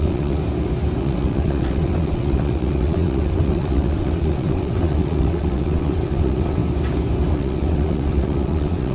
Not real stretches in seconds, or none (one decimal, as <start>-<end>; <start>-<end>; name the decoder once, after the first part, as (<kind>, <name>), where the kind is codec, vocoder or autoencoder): 0.0-0.4 (vocoder, WaveNeXt); 1.0-6.6; 7.3-8.9